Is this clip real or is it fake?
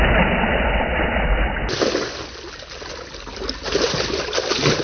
real